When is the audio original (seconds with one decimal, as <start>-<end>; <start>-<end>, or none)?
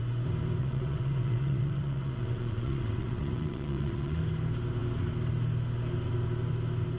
0.0-0.6; 4.2-7.0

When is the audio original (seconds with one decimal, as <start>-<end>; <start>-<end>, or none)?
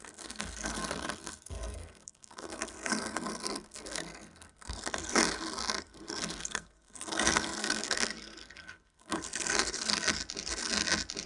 5.2-5.8; 10.2-11.3